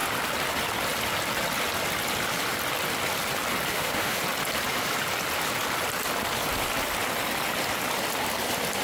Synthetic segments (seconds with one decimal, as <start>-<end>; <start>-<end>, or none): 3.7-4.2

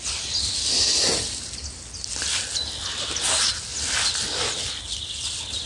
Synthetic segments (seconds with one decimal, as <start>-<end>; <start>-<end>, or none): none

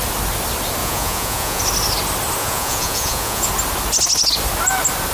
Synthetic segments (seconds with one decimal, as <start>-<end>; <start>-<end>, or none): 0.8-1.6; 2.4-3.5